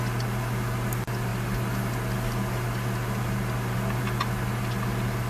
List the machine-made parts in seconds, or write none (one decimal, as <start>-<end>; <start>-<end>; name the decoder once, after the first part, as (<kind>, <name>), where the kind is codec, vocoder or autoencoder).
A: none